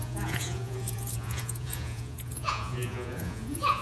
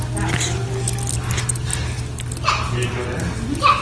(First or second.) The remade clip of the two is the first